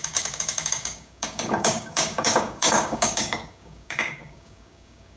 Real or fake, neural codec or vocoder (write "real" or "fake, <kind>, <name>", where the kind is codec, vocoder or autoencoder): fake, codec, DAC